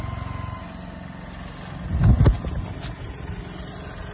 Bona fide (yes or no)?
yes